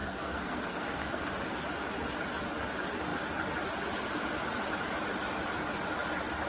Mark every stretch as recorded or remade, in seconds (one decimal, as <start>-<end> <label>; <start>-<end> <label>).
0.0-1.3 remade; 1.3-6.5 recorded